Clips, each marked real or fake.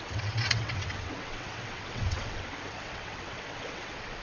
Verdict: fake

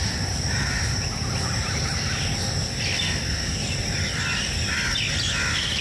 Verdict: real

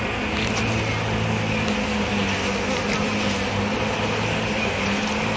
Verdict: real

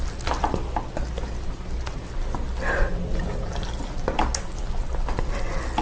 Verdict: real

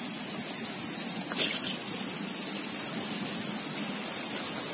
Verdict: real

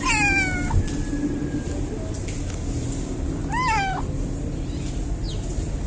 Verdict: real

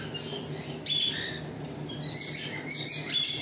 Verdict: real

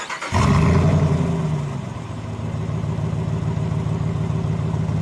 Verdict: real